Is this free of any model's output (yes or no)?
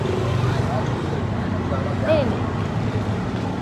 yes